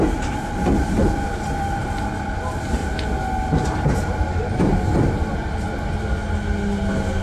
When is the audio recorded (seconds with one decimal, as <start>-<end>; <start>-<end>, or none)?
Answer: 0.0-7.2